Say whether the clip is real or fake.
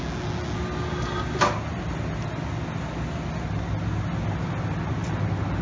real